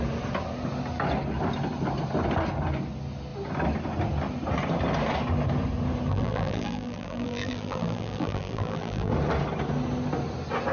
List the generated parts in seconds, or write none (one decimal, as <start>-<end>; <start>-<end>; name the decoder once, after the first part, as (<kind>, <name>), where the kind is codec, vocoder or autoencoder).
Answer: 6.1-9.1 (vocoder, BigVGAN v2)